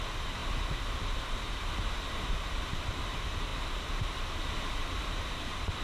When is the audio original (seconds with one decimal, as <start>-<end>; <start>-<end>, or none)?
0.4-2.1